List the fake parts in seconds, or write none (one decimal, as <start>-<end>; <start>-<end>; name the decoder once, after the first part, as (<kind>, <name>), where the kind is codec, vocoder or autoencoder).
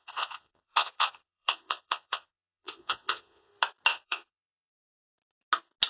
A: 0.0-3.5 (vocoder, Vocos); 3.9-4.7